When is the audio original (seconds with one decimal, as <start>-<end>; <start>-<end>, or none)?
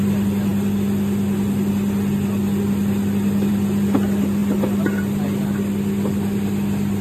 0.0-7.0